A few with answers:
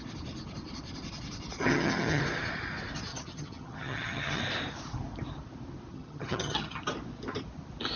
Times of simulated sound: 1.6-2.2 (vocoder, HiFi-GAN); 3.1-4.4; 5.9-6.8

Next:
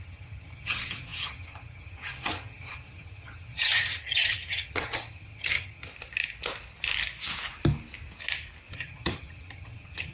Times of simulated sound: 0.0-5.9 (vocoder, HiFi-GAN); 8.7-10.1